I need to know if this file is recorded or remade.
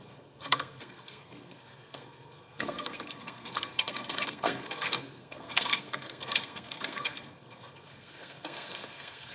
remade